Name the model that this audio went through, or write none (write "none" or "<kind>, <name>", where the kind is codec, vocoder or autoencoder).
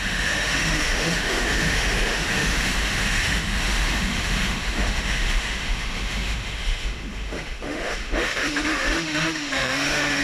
autoencoder, DAC-VAE